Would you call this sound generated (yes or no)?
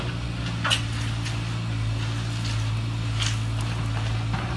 no